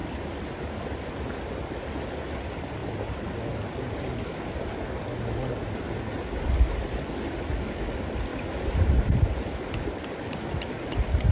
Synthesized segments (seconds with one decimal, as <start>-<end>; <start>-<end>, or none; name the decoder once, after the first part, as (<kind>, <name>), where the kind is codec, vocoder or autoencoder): 8.3-8.9 (vocoder, BigVGAN v2)